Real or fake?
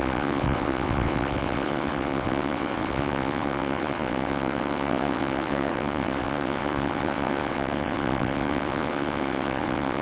fake